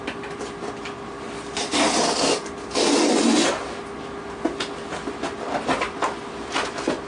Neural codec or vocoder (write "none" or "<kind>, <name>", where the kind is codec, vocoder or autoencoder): none